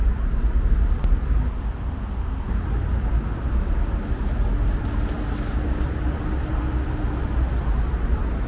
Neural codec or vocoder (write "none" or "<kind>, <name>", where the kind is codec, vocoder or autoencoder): none